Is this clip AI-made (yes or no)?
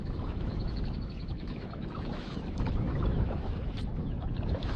yes